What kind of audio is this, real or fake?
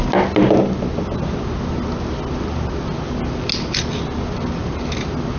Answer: real